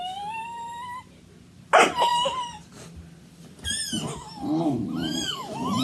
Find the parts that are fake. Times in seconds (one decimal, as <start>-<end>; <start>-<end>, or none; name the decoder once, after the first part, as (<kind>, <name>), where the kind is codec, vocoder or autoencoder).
none